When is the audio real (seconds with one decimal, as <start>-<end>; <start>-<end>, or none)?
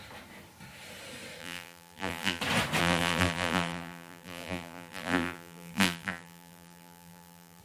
0.0-1.4; 2.4-2.8